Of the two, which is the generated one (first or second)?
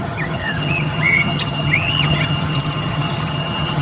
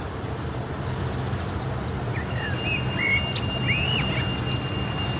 first